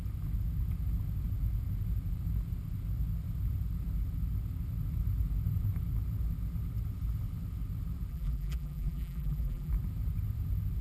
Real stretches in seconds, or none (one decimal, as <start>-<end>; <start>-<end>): 0.0-8.1; 9.7-10.8